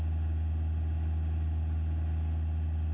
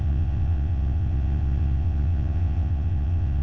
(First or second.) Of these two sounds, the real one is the first